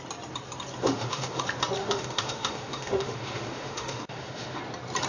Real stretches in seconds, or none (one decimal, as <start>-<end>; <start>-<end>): 0.0-0.8; 1.4-1.8; 4.6-5.1